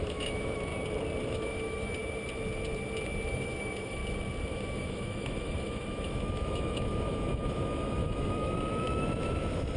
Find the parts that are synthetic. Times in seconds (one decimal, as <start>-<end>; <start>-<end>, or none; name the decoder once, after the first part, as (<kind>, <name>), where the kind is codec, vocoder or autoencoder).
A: 0.0-0.7 (autoencoder, DAC-VAE); 1.3-2.0; 3.3-4.0; 4.5-9.8